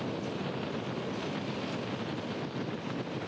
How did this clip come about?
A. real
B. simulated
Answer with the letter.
A